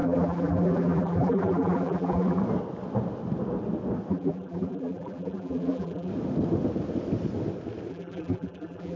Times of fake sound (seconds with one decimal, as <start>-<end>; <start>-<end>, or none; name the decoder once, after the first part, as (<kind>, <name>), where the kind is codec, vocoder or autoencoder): 0.0-2.4 (vocoder, BigVGAN v2); 4.1-6.1; 7.9-9.0